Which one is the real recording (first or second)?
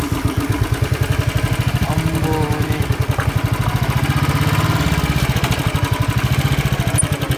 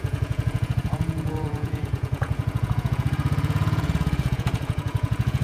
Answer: first